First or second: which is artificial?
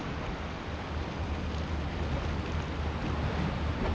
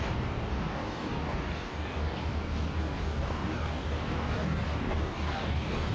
second